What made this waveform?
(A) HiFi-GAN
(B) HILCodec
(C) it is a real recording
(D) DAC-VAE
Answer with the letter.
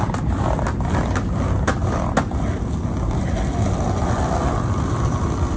C